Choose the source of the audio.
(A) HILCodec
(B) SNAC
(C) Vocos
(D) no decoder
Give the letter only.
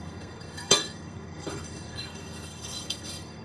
B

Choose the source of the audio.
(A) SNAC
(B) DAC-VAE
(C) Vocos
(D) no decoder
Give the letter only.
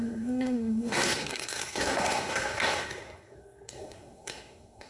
A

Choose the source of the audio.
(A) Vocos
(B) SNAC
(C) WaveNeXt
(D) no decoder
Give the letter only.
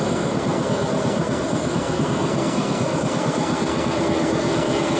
B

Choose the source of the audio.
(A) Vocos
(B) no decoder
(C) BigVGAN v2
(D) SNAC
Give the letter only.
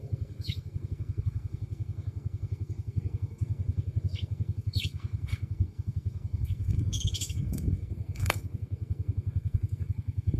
D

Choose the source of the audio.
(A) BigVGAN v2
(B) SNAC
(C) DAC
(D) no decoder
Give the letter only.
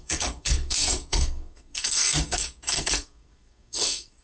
B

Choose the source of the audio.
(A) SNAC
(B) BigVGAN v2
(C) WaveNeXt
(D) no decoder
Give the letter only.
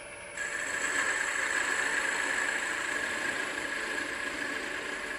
D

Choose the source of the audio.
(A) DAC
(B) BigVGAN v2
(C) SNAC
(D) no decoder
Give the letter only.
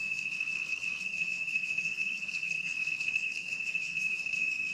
C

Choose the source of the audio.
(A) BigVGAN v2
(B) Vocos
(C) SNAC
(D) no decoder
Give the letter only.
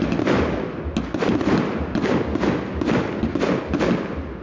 D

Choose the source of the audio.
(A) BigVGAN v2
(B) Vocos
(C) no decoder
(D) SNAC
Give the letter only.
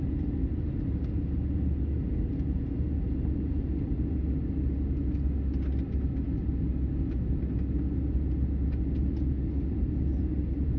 C